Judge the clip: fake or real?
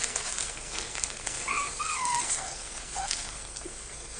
fake